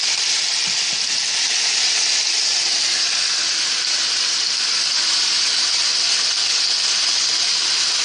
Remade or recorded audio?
recorded